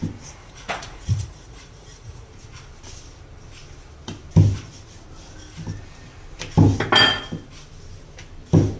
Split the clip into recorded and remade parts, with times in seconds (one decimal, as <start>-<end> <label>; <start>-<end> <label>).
0.0-0.4 recorded; 0.4-2.3 remade; 2.3-8.8 recorded